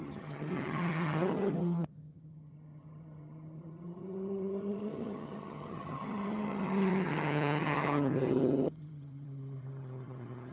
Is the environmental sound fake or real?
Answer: fake